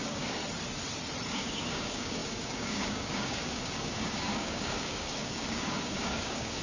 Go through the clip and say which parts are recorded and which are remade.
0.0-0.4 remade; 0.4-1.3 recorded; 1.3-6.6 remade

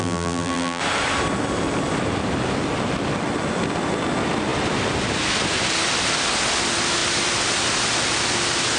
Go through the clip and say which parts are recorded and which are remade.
0.0-0.8 remade; 0.8-8.8 recorded

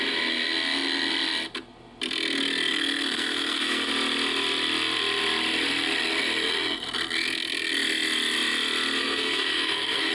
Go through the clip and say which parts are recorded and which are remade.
0.0-2.7 recorded; 2.7-3.9 remade; 3.9-9.0 recorded; 9.0-10.1 remade

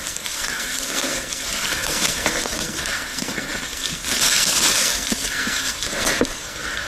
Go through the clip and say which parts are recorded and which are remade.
0.0-6.9 remade

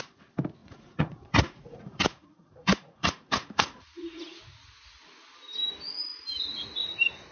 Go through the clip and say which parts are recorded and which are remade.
0.0-0.6 recorded; 0.6-4.4 remade; 4.4-7.3 recorded